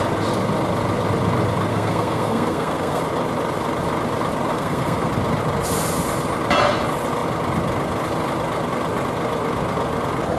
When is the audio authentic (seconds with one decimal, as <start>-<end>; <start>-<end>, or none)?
0.0-1.7; 3.0-4.5; 5.1-10.4